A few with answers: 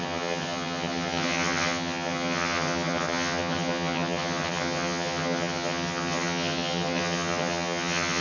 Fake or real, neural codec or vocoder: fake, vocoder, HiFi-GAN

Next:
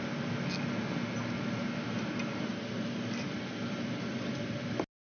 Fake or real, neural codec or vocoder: real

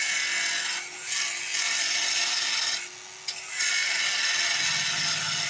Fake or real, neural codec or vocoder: real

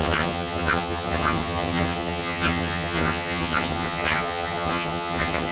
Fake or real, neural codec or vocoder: fake, vocoder, HiFi-GAN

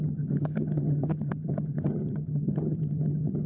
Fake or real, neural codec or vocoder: fake, vocoder, HiFi-GAN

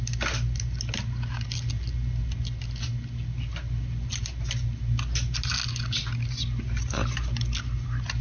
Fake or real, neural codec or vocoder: real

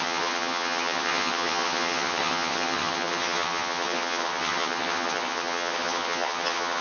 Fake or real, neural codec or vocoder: fake, vocoder, HiFi-GAN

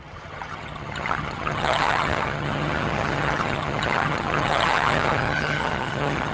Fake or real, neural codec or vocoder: fake, vocoder, HiFi-GAN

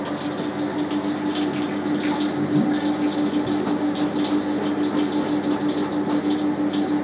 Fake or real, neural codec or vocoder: real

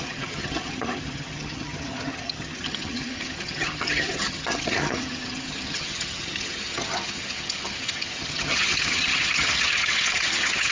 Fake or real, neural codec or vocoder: fake, vocoder, HiFi-GAN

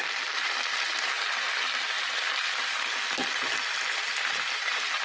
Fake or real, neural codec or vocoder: real